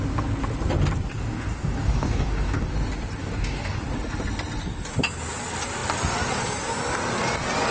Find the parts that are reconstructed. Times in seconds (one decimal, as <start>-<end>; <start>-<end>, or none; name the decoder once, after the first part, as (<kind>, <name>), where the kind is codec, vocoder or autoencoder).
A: 1.1-2.7 (codec, DAC); 3.2-3.8